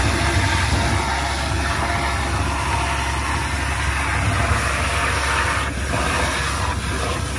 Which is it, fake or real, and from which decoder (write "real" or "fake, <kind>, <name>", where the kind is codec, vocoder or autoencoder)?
real